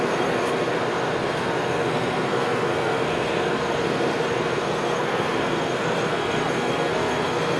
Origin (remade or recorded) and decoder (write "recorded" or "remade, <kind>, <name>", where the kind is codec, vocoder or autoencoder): remade, codec, SNAC